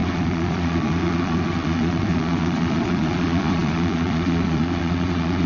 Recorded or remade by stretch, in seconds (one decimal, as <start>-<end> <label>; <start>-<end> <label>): 0.0-5.5 remade